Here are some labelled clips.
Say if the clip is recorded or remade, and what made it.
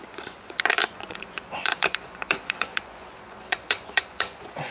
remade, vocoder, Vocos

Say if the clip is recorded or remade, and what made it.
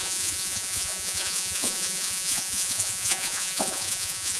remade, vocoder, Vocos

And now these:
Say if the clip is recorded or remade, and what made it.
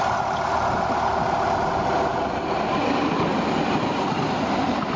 recorded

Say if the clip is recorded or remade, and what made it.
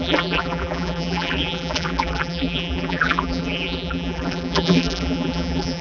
remade, vocoder, BigVGAN v2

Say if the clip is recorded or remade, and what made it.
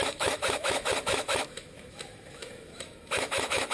remade, autoencoder, DAC-VAE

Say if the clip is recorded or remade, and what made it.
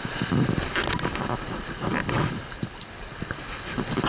recorded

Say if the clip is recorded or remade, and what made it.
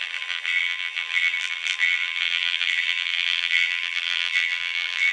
remade, vocoder, BigVGAN v2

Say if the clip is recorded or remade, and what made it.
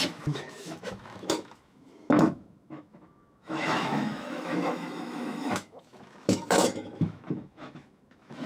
remade, autoencoder, DAC-VAE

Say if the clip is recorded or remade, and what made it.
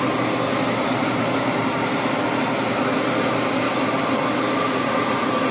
recorded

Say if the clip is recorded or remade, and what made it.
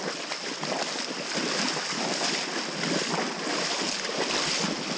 recorded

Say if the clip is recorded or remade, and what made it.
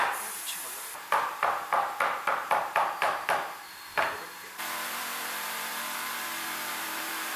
remade, vocoder, BigVGAN v2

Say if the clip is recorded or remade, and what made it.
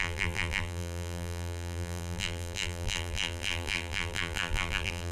remade, vocoder, BigVGAN v2